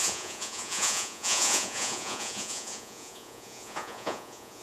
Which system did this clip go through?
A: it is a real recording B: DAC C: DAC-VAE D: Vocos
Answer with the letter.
D